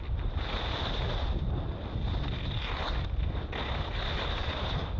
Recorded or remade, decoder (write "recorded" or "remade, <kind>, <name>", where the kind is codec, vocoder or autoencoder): recorded